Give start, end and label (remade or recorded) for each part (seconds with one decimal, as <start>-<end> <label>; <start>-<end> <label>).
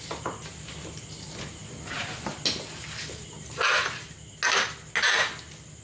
0.0-5.8 recorded